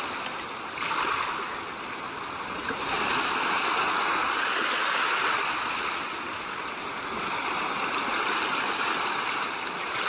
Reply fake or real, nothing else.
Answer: real